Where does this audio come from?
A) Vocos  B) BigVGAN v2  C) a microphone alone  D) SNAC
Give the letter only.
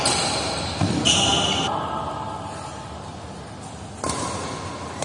C